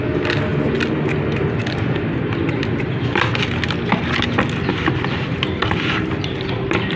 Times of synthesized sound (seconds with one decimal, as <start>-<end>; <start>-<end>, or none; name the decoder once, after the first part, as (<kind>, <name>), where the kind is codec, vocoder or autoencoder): none